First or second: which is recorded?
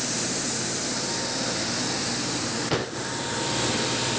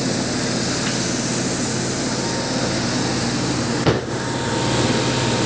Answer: second